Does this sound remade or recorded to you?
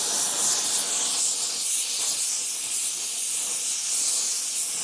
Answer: recorded